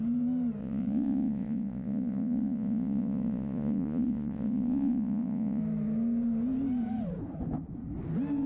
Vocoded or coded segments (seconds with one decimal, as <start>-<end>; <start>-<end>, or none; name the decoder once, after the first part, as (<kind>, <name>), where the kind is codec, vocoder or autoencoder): 0.6-5.6 (vocoder, Vocos)